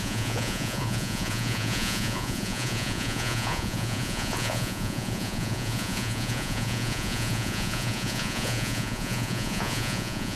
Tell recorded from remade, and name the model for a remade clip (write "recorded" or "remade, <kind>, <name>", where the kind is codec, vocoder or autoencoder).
remade, vocoder, Vocos